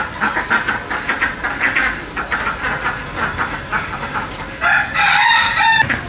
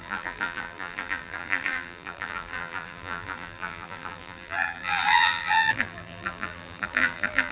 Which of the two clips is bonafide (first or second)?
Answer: first